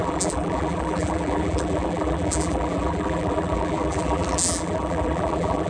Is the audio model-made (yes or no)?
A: yes